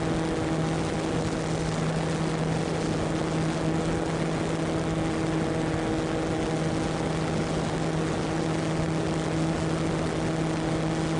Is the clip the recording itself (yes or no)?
yes